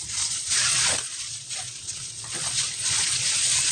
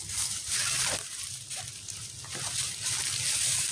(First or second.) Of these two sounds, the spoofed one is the first